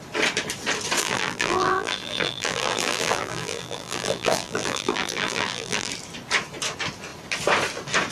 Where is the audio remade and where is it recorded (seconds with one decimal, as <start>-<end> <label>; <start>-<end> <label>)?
0.0-1.0 recorded; 1.0-5.9 remade; 5.9-8.1 recorded